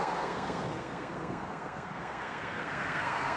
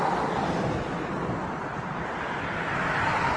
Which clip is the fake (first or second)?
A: first